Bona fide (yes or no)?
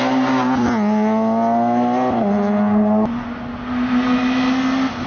yes